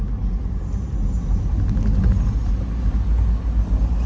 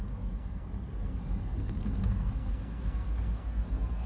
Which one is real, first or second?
first